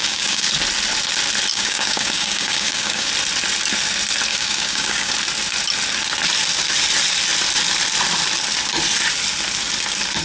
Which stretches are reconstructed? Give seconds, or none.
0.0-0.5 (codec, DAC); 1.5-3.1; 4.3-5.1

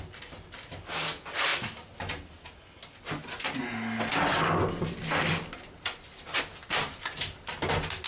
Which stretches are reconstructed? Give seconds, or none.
none

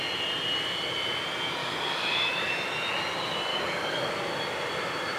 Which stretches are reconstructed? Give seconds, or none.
1.6-2.5 (codec, DAC); 3.5-4.1